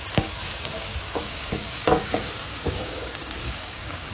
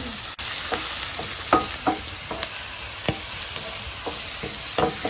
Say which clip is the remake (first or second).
first